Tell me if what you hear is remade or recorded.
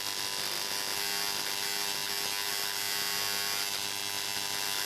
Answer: recorded